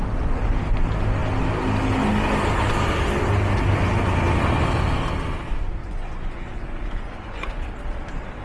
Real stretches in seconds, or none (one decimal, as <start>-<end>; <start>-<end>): 0.0-5.8; 7.7-8.4